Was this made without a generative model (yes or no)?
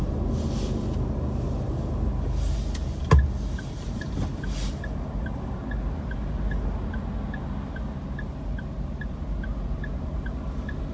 yes